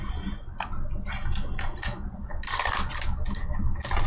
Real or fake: real